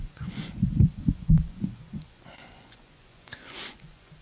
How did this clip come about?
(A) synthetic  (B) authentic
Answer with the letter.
A